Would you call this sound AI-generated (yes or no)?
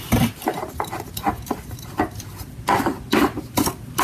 no